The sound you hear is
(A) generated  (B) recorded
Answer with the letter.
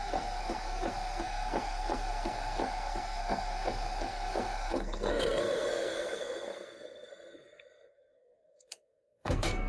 A